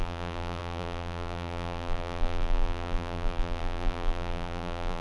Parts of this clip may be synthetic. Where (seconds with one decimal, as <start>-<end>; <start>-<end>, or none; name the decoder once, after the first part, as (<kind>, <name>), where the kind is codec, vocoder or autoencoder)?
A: 0.0-5.0 (vocoder, BigVGAN v2)